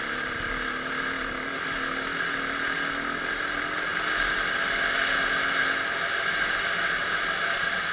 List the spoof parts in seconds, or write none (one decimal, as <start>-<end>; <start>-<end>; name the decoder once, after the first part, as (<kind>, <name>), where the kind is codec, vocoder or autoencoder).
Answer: none